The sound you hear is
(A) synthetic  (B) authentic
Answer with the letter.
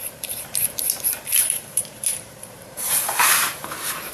A